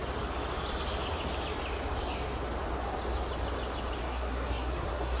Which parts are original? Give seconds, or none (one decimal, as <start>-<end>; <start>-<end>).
0.0-4.0